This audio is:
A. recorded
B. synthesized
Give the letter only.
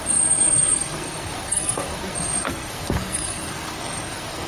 B